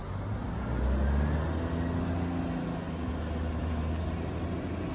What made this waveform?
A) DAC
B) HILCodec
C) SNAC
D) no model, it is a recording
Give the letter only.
D